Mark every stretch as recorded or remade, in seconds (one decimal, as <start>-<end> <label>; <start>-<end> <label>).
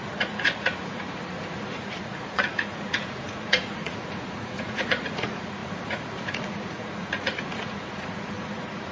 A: 0.0-8.9 remade